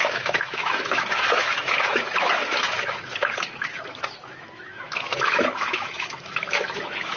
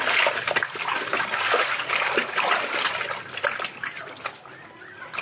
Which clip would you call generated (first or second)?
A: first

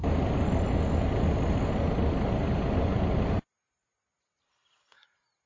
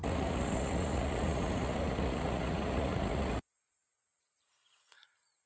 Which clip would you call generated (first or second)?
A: second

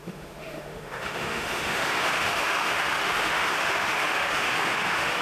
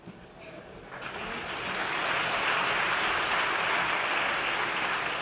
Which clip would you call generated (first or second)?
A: first